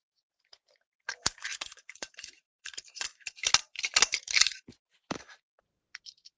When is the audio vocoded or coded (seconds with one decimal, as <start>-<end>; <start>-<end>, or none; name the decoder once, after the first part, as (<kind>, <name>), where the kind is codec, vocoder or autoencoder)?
0.0-1.5 (vocoder, BigVGAN v2); 2.1-6.4